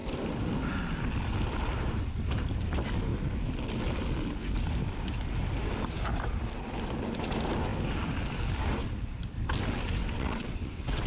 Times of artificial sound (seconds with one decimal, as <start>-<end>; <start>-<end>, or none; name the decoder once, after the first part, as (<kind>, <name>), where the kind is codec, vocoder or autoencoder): 10.0-11.1 (vocoder, WaveNeXt)